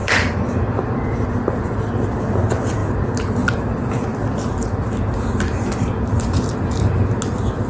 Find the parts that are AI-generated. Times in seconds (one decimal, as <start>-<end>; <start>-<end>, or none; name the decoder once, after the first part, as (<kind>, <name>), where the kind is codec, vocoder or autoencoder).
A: 0.0-2.2 (vocoder, BigVGAN v2); 2.8-4.4